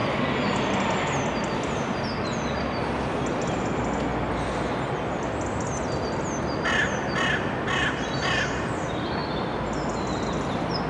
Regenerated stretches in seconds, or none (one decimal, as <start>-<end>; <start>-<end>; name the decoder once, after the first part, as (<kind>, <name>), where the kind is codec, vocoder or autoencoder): none